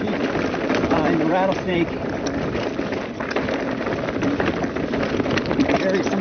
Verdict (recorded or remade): recorded